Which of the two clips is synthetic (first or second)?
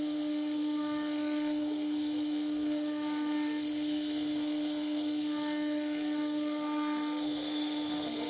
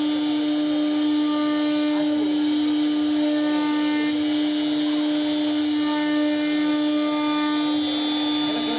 first